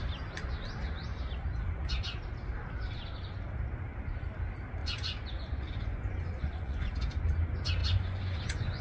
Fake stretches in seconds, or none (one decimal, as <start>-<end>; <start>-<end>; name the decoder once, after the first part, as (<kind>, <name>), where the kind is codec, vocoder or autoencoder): 4.8-6.9 (vocoder, Vocos); 7.8-8.8